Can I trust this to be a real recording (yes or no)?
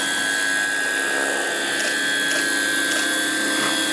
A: yes